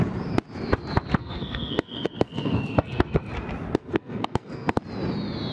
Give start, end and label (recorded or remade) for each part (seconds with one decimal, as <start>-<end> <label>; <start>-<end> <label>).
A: 0.0-1.2 recorded; 1.2-3.3 remade; 3.3-3.8 recorded; 3.8-4.8 remade; 4.8-5.5 recorded